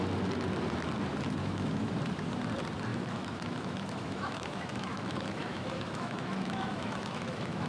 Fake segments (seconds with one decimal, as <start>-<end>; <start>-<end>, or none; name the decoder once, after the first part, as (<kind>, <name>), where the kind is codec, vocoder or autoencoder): 1.4-1.9 (autoencoder, DAC-VAE); 2.9-7.7